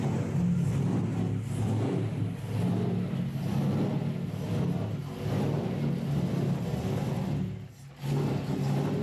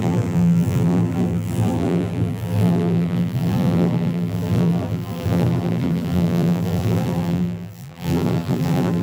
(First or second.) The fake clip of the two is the second